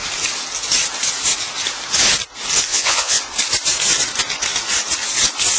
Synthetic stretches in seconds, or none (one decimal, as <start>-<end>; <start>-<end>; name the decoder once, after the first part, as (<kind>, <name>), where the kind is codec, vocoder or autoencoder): 2.7-3.2 (vocoder, Vocos)